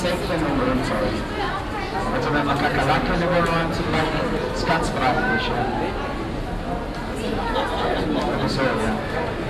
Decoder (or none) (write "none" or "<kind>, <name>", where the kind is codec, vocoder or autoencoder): none